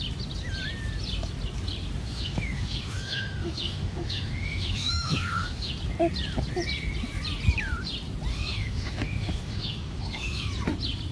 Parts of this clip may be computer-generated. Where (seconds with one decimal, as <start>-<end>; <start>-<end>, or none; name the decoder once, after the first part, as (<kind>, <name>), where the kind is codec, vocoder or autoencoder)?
2.0-5.7 (autoencoder, DAC-VAE); 8.3-10.5